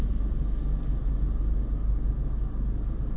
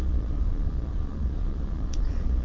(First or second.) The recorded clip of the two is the first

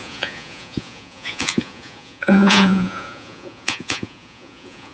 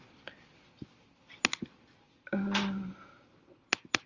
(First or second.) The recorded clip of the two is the second